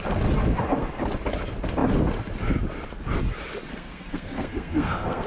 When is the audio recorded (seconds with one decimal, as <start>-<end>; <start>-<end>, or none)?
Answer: 0.0-0.4; 0.9-3.7